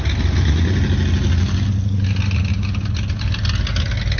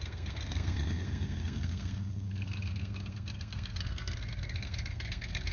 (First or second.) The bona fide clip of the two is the first